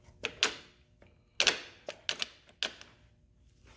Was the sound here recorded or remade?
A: recorded